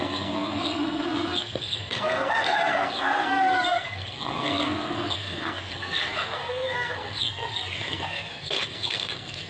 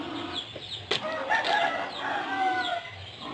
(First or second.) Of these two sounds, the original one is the second